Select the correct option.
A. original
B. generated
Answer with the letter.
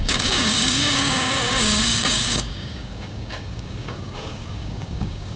B